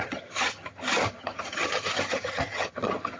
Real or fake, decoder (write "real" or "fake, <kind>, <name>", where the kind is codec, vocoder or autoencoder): fake, vocoder, HiFi-GAN